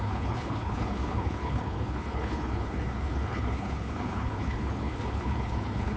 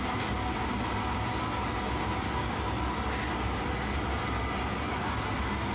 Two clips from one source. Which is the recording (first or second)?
second